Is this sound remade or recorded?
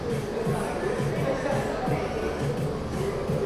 recorded